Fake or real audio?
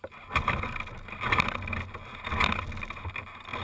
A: real